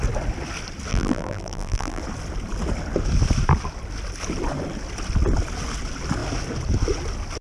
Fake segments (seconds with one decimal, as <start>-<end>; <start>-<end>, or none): 0.9-2.0